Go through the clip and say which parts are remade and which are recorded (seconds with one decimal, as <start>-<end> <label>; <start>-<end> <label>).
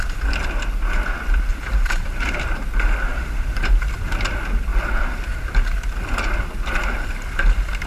0.0-1.5 recorded; 1.5-2.6 remade; 2.6-3.1 recorded; 3.1-3.7 remade; 3.7-7.9 recorded